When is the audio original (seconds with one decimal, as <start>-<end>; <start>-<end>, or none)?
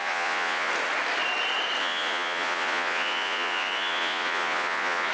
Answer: 0.7-1.8